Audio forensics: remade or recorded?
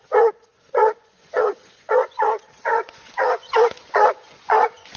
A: remade